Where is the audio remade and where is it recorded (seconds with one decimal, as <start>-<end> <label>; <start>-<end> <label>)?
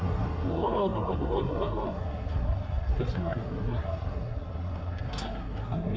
0.0-6.0 remade